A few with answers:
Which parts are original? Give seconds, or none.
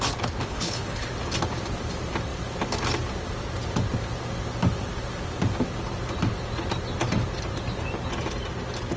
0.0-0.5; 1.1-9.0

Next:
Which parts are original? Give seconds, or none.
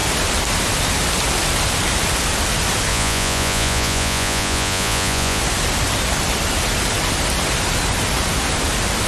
0.0-2.9; 5.4-9.1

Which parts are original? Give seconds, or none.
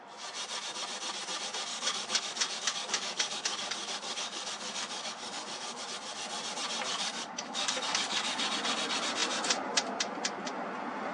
0.0-1.7; 5.8-6.9; 8.4-11.1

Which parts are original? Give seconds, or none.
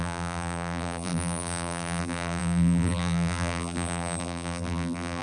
none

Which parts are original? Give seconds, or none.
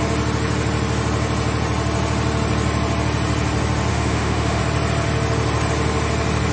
0.0-3.9; 4.6-6.5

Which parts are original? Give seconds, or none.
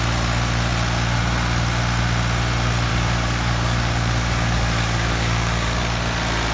0.0-2.9; 5.8-6.5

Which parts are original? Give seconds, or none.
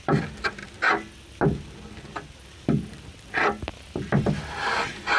0.6-3.7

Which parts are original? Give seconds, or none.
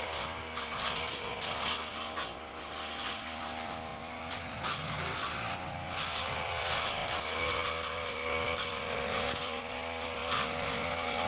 0.0-11.3